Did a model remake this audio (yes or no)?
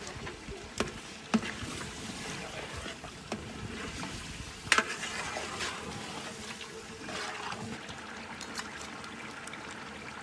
no